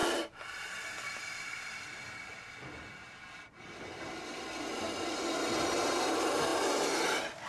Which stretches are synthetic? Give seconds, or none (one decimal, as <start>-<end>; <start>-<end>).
0.0-7.5

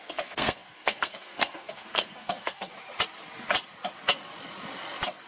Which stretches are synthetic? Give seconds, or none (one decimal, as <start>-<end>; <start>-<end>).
0.0-2.7

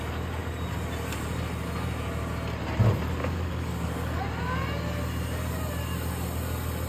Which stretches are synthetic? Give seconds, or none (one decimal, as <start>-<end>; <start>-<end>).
3.2-4.2

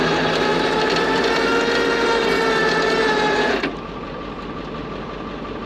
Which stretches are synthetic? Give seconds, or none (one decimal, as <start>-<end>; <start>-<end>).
none

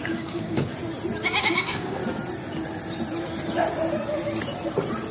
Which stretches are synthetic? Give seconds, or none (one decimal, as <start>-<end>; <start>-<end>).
0.0-0.7; 1.4-2.0